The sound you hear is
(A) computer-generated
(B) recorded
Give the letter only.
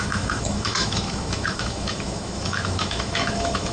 A